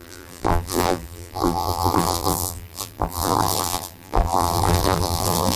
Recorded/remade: remade